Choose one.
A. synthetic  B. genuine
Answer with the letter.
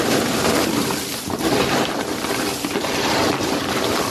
A